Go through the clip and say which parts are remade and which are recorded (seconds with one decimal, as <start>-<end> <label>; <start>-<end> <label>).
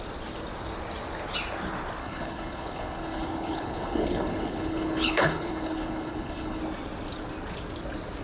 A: 0.0-2.0 recorded; 2.0-6.6 remade; 6.6-8.2 recorded